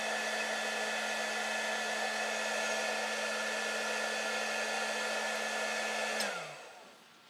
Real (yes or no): yes